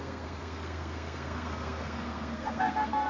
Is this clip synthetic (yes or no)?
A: yes